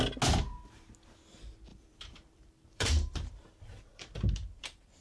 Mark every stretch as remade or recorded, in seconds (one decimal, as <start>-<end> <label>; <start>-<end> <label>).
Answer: 0.0-1.7 recorded; 1.7-5.0 remade